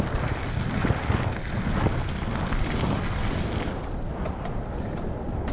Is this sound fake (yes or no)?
no